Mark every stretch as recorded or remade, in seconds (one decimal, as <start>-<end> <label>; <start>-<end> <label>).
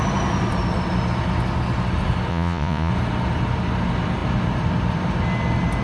0.0-2.3 recorded; 2.3-2.9 remade; 2.9-5.8 recorded